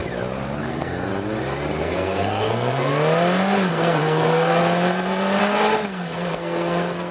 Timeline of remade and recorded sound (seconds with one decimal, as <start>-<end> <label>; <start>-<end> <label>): 0.0-0.6 recorded; 0.6-1.1 remade; 1.1-1.8 recorded; 1.8-2.9 remade; 2.9-3.7 recorded; 3.7-4.6 remade; 4.6-5.4 recorded; 5.4-7.1 remade